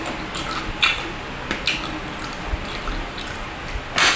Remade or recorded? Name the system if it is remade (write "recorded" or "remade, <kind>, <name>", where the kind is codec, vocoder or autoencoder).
recorded